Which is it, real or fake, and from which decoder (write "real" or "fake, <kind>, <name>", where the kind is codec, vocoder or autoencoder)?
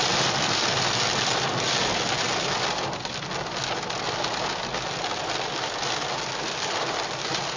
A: real